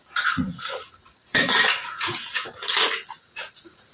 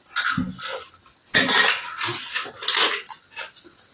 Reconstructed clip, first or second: first